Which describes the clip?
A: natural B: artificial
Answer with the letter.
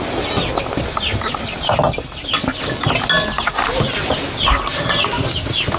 A